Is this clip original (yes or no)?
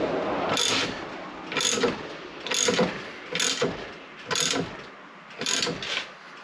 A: yes